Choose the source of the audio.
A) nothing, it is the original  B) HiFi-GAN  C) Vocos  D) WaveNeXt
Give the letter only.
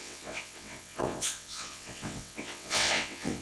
D